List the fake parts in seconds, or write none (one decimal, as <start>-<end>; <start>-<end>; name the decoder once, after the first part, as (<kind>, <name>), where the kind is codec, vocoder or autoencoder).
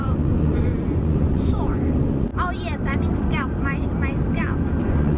0.0-2.3 (vocoder, Vocos); 4.8-5.2